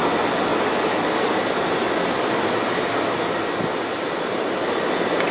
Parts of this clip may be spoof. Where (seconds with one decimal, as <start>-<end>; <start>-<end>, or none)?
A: none